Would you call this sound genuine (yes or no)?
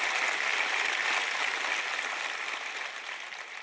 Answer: yes